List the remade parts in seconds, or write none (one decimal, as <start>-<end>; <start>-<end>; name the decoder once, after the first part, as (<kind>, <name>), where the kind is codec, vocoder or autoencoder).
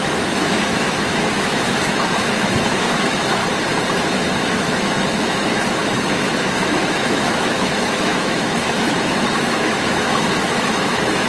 0.0-3.4 (autoencoder, DAC-VAE); 3.9-11.3